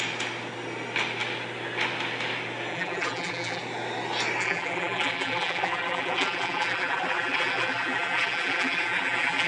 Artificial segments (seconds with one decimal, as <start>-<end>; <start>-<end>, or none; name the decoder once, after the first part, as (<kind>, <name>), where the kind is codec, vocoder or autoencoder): 2.7-3.6 (vocoder, BigVGAN v2); 4.4-9.5